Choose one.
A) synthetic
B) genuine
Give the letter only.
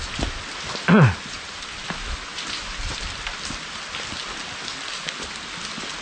B